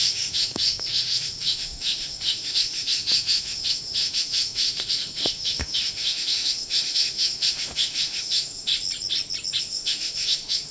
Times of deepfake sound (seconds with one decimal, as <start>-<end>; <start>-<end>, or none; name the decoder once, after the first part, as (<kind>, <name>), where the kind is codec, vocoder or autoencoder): 0.0-8.7 (autoencoder, DAC-VAE); 9.6-10.7